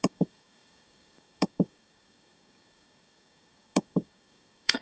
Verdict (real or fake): fake